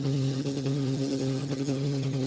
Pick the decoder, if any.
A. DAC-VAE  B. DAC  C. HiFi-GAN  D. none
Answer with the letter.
C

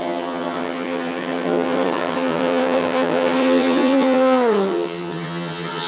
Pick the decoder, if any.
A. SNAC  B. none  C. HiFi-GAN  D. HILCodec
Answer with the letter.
C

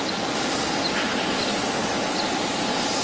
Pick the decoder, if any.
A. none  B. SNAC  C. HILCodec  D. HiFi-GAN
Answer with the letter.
A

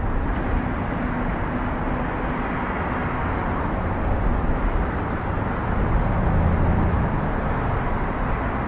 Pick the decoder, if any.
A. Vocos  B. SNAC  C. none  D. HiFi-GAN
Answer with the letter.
C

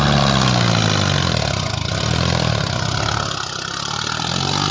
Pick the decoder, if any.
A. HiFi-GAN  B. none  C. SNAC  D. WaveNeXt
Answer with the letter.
B